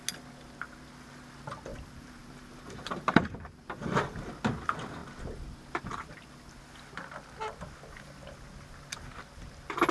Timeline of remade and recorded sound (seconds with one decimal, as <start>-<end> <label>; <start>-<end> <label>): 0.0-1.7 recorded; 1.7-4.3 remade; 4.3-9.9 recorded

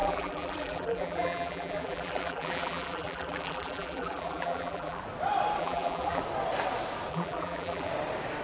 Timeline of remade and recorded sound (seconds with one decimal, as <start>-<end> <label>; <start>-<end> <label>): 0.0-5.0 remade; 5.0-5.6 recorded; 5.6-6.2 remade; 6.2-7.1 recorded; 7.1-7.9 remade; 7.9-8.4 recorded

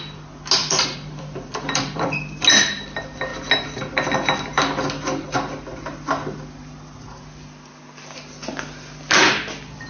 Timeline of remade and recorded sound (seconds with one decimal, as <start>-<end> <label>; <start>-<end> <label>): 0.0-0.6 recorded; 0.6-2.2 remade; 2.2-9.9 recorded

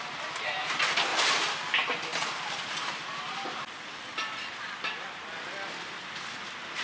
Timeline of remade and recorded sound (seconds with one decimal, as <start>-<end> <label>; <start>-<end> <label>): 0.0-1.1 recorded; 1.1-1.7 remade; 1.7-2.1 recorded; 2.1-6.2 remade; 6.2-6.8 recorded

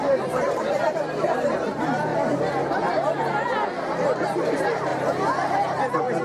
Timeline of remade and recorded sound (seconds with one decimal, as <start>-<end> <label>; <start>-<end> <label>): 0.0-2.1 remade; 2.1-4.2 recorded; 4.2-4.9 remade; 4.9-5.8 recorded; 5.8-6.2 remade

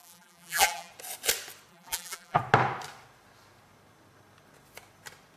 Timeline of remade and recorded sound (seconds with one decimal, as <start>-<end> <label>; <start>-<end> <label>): 0.0-0.9 remade; 0.9-1.7 recorded; 1.7-2.4 remade; 2.4-5.4 recorded

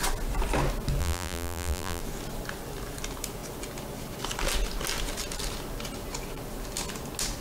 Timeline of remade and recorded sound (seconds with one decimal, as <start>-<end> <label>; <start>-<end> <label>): 0.0-1.0 recorded; 1.0-2.0 remade; 2.0-7.4 recorded

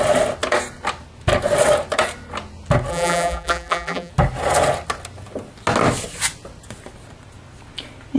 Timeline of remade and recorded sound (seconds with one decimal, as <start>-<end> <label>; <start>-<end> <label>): 0.0-2.9 recorded; 2.9-4.1 remade; 4.1-8.2 recorded